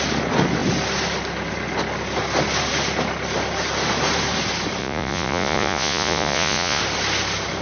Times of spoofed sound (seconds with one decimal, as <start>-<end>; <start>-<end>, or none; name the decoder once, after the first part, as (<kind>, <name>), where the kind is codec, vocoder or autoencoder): 4.8-6.8 (vocoder, Vocos)